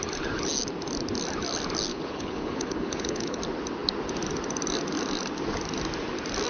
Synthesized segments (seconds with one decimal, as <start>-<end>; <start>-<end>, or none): 1.9-3.4